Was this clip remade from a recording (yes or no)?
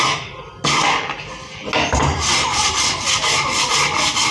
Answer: no